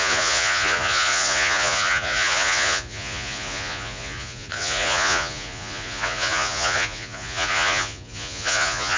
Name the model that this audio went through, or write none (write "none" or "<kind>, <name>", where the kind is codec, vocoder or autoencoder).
vocoder, Vocos